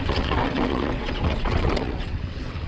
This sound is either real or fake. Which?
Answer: fake